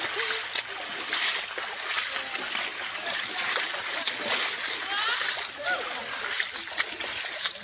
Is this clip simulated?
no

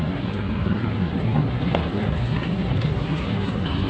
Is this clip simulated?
yes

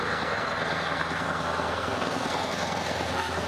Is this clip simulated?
yes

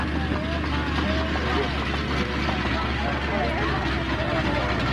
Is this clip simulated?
no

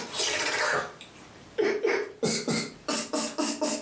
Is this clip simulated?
no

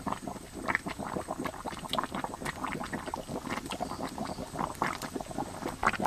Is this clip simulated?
no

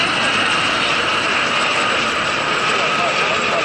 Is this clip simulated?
no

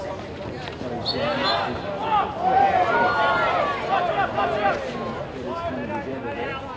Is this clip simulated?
no